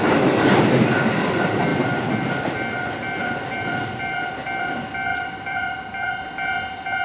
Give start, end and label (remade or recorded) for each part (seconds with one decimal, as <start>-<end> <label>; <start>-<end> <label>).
0.0-3.2 recorded; 3.2-4.3 remade; 4.3-5.1 recorded; 5.1-6.1 remade; 6.1-7.0 recorded